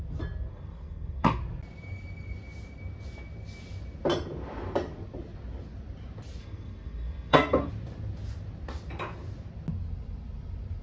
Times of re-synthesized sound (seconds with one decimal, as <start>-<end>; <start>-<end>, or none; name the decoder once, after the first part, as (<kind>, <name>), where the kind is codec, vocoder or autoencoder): 0.5-1.4 (codec, SNAC); 6.4-7.7

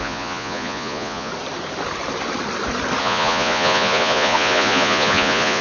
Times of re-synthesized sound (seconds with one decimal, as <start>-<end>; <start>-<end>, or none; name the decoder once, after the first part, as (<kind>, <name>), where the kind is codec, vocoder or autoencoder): 0.0-1.3 (vocoder, Vocos); 3.0-5.6